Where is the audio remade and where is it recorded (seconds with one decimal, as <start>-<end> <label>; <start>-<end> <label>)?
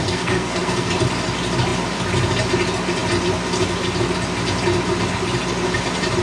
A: 0.0-0.9 remade; 0.9-6.2 recorded